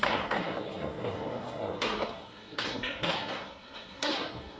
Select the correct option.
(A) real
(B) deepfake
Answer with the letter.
B